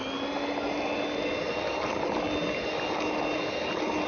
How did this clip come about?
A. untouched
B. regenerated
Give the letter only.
A